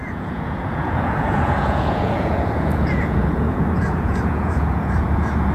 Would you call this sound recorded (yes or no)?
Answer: no